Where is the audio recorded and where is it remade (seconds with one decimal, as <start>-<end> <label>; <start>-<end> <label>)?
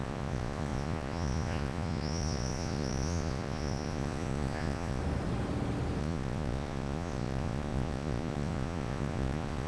0.0-5.0 remade; 5.0-6.0 recorded; 6.0-9.7 remade